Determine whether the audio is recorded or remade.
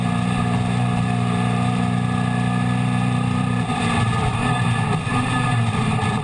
remade